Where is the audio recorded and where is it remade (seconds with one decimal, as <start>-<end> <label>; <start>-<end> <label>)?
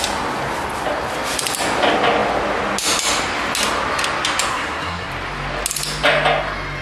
0.0-4.5 recorded; 4.5-5.1 remade; 5.1-6.8 recorded